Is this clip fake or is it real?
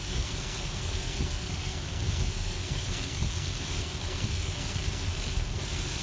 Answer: fake